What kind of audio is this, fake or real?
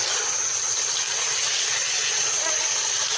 real